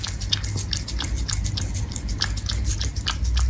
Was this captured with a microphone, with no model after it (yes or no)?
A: yes